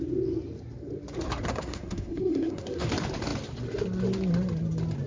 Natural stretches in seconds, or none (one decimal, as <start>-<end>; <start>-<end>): 0.0-1.5; 2.9-5.1